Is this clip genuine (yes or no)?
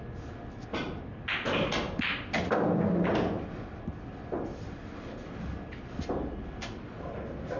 yes